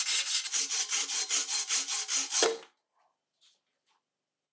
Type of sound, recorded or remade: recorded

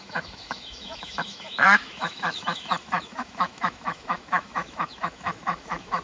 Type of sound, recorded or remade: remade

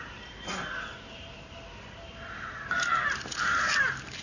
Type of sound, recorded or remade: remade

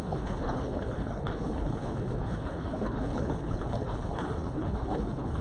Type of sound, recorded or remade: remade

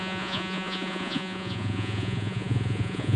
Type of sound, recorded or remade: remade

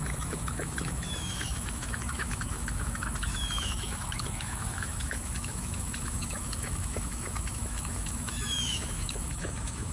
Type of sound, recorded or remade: remade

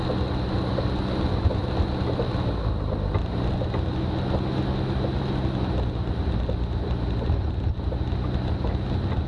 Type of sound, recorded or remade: recorded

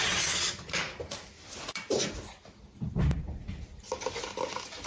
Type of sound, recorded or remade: recorded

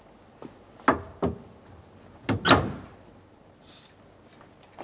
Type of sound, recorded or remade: recorded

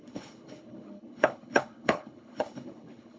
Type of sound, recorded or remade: remade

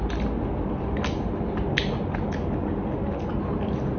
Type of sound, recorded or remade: recorded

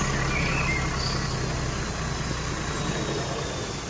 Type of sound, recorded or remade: recorded